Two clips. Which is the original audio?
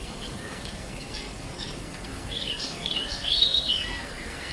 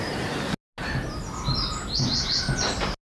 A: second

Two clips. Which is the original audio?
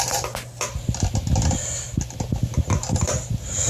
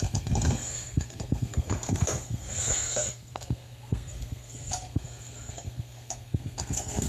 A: first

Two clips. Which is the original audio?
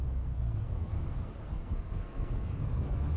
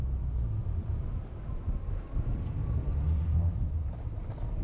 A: second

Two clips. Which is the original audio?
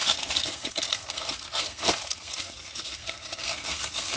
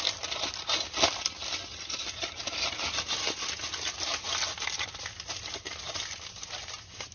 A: second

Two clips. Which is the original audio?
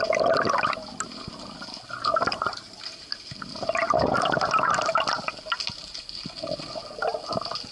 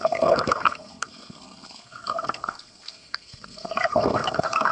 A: first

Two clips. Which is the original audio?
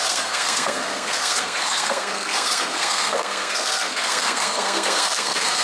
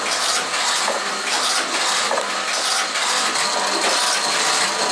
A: second